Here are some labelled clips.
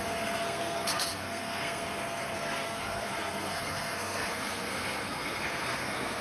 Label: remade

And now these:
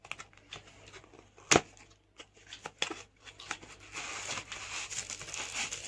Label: recorded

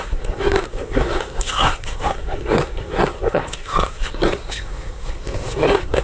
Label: remade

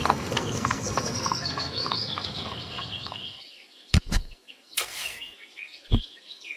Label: remade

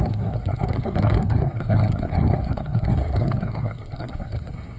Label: remade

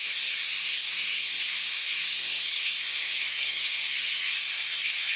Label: remade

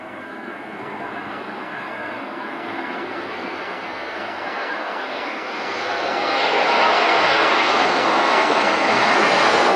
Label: remade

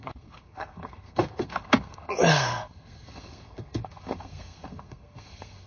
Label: remade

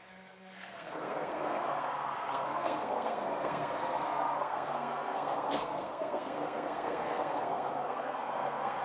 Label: remade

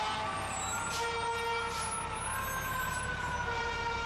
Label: recorded